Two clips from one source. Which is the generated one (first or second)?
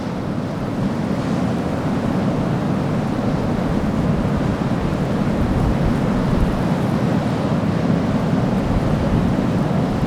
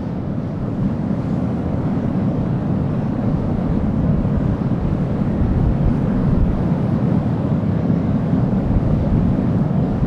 second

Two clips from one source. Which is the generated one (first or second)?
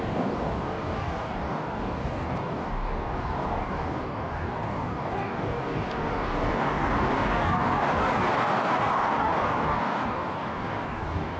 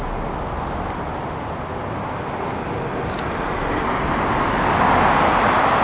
first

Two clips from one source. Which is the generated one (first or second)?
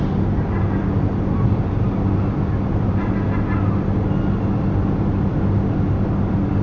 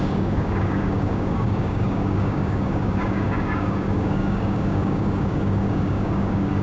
second